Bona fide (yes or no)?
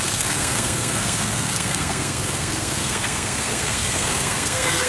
no